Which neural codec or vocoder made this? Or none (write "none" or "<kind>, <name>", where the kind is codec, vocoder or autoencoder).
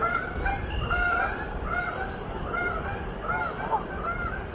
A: none